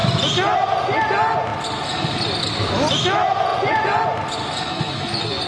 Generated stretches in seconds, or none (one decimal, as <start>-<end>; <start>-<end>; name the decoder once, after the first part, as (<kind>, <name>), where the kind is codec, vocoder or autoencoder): 3.5-4.0 (vocoder, Vocos)